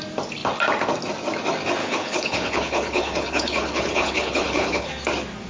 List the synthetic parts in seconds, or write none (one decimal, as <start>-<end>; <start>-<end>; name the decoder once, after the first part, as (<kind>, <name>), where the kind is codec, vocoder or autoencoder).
1.8-4.9 (codec, HILCodec)